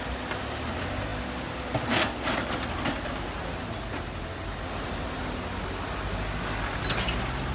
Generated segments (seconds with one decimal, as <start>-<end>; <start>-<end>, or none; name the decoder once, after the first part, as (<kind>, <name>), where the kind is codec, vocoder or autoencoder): none